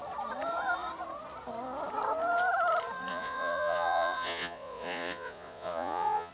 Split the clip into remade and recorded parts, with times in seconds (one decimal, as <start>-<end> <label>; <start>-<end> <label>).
0.0-3.1 recorded; 3.1-6.3 remade